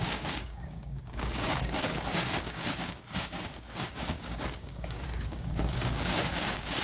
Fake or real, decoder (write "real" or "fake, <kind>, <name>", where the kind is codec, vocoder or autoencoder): fake, codec, DAC